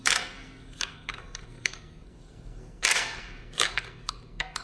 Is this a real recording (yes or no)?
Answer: no